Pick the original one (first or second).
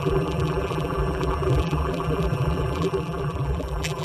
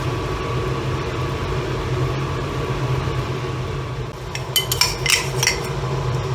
second